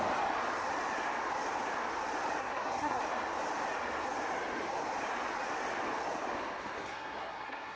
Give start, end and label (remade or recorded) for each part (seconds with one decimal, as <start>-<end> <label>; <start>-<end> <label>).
0.0-2.4 recorded; 2.4-3.0 remade; 3.0-6.8 recorded; 6.8-7.8 remade